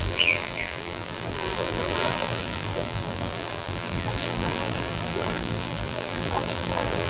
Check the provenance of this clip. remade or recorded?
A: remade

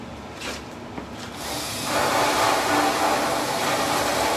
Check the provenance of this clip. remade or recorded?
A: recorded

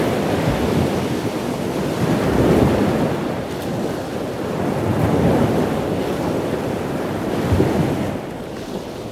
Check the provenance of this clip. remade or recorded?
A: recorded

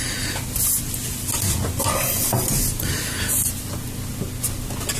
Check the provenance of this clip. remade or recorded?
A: recorded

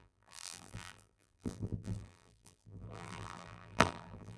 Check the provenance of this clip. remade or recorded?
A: remade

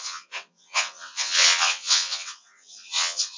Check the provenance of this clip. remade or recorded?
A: remade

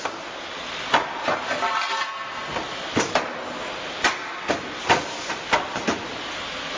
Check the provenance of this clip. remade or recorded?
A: recorded